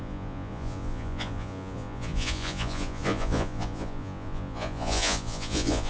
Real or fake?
fake